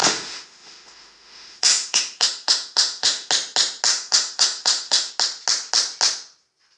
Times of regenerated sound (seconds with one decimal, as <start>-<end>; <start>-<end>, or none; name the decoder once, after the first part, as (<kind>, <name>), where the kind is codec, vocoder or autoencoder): 0.0-3.3 (autoencoder, DAC-VAE); 3.9-5.1